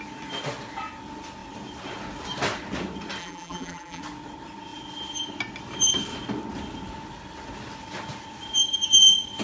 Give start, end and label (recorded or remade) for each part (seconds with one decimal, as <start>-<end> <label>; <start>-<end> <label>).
0.0-3.2 recorded; 3.2-4.0 remade; 4.0-9.4 recorded